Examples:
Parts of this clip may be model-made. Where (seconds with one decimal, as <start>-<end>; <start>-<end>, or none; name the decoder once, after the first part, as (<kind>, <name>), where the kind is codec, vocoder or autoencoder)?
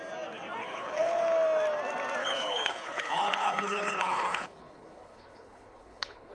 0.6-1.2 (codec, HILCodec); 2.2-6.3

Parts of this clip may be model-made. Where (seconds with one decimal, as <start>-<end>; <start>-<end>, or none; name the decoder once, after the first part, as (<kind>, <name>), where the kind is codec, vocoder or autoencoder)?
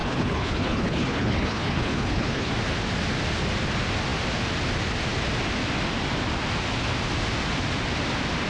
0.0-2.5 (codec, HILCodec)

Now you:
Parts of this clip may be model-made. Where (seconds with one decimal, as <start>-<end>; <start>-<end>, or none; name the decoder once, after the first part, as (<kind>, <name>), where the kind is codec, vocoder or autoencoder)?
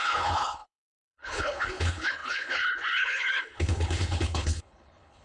0.0-5.2 (codec, HILCodec)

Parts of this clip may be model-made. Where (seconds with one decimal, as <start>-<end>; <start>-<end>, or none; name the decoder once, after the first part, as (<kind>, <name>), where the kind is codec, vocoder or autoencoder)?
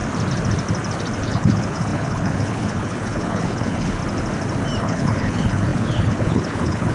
1.2-4.0 (codec, HILCodec); 4.8-6.9